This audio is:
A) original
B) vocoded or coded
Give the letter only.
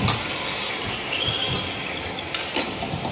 A